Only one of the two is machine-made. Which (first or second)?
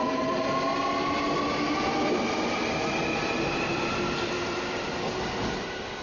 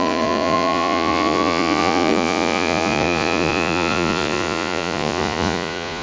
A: second